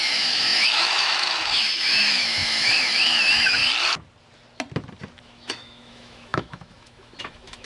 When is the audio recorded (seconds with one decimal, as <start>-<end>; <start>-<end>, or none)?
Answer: 3.6-5.2